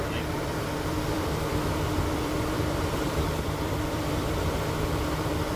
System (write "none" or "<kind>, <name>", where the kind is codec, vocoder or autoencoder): vocoder, BigVGAN v2